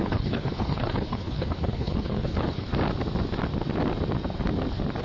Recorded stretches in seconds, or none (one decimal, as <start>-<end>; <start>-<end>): 2.7-5.0